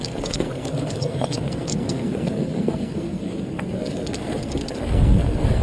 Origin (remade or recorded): remade